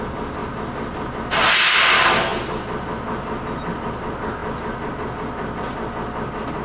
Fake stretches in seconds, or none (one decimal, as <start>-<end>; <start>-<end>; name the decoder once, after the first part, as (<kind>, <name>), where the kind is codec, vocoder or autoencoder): none